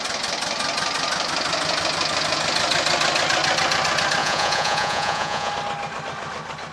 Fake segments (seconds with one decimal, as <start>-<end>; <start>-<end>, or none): 4.2-5.5